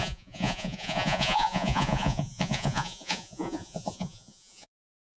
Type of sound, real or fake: fake